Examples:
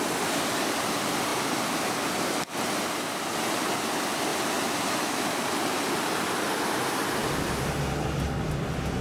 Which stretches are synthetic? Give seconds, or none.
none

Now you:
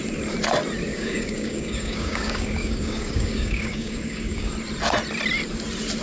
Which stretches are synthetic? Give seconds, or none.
0.9-4.5 (codec, DAC)

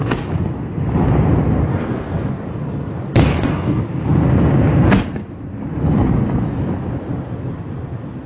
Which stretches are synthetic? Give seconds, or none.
1.7-2.3 (codec, DAC); 3.3-3.8

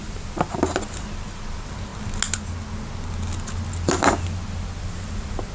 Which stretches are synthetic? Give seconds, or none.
none

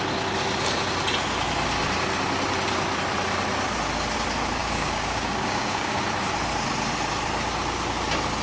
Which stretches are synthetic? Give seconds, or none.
4.6-6.0 (codec, DAC)